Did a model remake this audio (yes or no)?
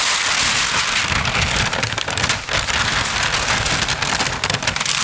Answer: no